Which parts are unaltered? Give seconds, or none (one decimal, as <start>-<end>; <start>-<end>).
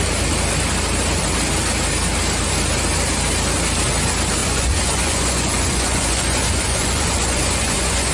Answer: 0.0-4.4